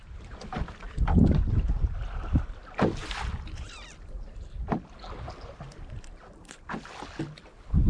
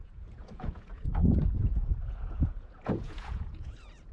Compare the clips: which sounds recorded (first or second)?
first